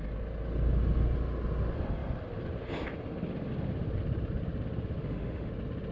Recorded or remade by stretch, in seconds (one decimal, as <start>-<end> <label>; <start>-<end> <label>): 0.0-5.0 recorded; 5.0-5.5 remade; 5.5-5.9 recorded